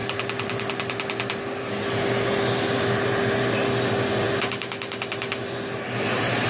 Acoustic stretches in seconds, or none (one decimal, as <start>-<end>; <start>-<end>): 0.0-6.5

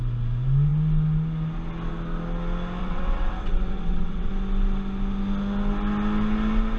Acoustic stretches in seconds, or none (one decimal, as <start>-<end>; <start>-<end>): 0.0-2.8; 4.3-6.8

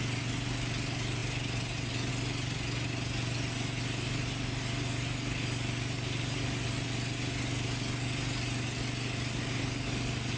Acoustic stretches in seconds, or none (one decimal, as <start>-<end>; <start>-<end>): 0.0-10.4

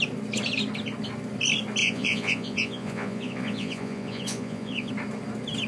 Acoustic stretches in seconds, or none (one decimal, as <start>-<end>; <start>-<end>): 0.0-1.8; 4.9-5.7

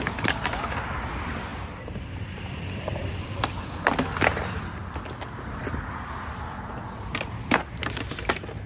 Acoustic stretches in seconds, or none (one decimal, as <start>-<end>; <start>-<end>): 0.0-1.5; 4.4-8.7